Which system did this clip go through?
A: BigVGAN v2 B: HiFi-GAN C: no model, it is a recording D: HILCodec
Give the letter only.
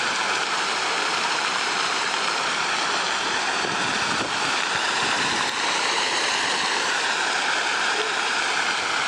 A